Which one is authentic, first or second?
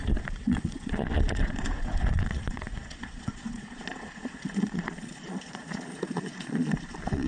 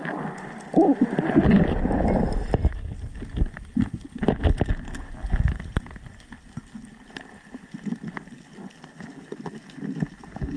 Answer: second